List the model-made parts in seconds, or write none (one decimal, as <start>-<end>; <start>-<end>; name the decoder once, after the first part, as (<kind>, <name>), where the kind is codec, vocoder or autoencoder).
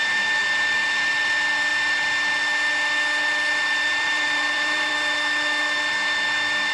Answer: 3.9-4.9 (vocoder, BigVGAN v2)